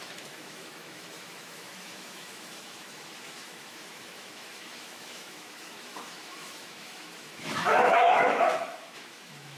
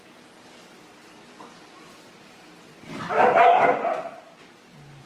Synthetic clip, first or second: first